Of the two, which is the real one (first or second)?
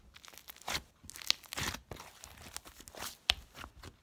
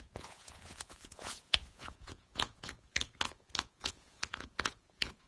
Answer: first